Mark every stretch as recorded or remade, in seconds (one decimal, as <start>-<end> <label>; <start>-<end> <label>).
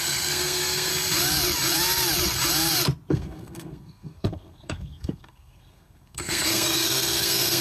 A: 0.0-0.9 remade; 0.9-3.1 recorded; 3.1-7.6 remade